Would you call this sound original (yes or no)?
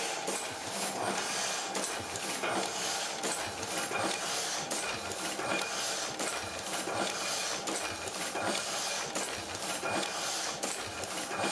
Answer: no